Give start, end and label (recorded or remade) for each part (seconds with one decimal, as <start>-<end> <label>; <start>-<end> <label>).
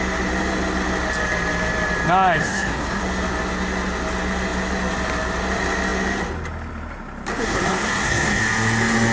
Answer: 0.0-2.4 recorded; 2.4-3.0 remade; 3.0-7.3 recorded; 7.3-8.4 remade; 8.4-9.1 recorded